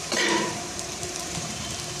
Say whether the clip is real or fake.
fake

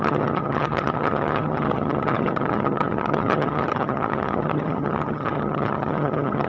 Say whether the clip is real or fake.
fake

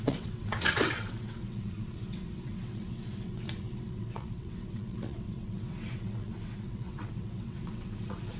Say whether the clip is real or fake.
fake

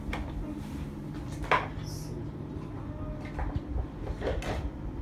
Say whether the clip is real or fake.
real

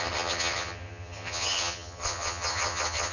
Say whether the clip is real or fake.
fake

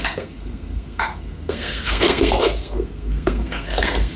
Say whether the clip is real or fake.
fake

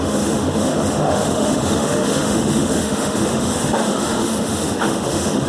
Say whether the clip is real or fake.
fake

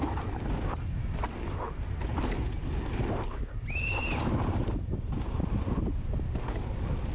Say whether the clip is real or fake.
real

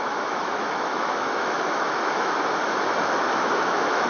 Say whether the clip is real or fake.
fake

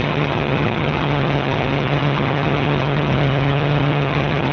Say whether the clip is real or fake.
fake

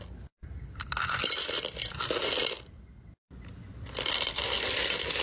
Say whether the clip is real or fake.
real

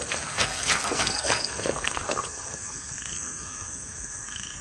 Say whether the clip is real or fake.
fake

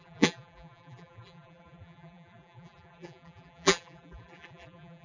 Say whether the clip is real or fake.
fake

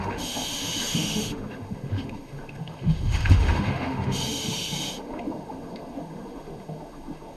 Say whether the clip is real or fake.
fake